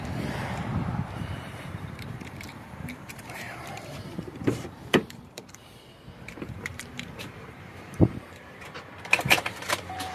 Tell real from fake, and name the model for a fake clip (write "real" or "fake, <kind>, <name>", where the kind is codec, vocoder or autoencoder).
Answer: fake, vocoder, BigVGAN v2